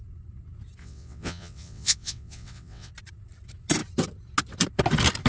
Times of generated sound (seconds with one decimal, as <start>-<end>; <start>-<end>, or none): 0.8-2.9